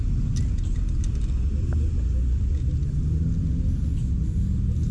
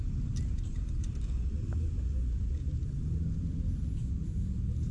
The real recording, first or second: first